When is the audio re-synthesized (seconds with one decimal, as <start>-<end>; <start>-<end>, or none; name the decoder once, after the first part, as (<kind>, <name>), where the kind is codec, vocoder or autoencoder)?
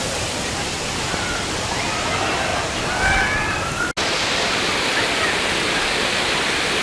none